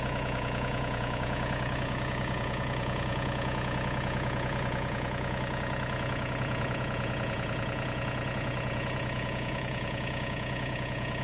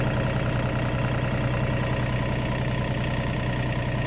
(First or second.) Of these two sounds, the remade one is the first